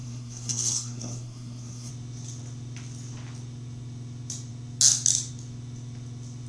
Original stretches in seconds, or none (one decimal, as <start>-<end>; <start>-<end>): 1.9-6.5